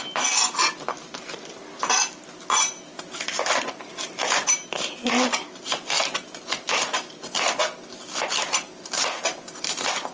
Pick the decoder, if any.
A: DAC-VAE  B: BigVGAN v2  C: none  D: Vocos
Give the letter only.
C